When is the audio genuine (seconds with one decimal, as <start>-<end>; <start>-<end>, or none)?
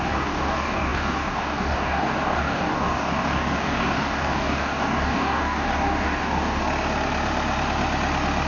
6.6-8.5